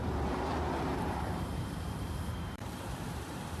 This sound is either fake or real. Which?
fake